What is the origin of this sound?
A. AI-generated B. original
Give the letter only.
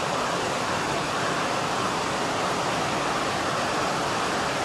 B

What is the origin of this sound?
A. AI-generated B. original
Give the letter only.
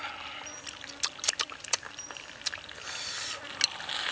B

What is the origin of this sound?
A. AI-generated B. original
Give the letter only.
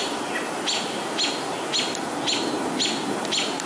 B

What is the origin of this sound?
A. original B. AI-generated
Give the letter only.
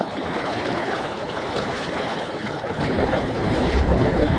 B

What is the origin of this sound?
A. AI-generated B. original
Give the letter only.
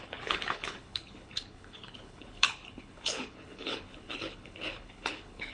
A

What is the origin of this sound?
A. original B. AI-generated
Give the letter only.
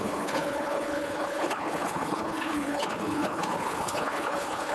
B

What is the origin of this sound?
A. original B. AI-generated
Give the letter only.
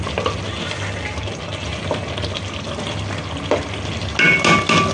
A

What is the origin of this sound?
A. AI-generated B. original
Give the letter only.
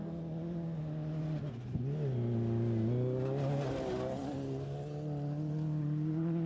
B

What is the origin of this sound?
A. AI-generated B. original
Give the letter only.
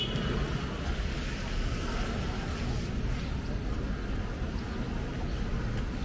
B